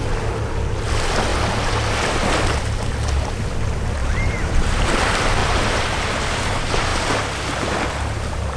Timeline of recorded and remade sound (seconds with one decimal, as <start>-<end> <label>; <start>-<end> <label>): 0.0-4.0 recorded; 4.0-4.8 remade; 4.8-5.4 recorded; 5.4-6.0 remade; 6.0-8.6 recorded